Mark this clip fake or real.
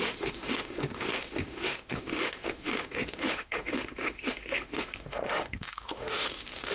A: fake